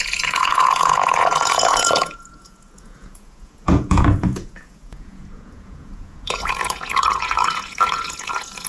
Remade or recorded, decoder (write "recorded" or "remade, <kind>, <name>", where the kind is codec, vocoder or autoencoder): remade, vocoder, Vocos